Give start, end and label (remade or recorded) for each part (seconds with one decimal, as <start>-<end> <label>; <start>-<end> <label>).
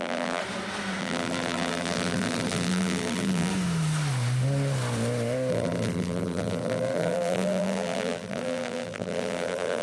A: 0.0-0.4 remade; 0.4-1.0 recorded; 1.0-3.5 remade; 3.5-5.5 recorded; 5.5-9.8 remade